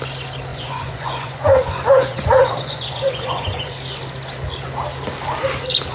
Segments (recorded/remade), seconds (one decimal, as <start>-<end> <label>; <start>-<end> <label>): 0.0-0.5 recorded; 0.5-3.7 remade; 3.7-5.9 recorded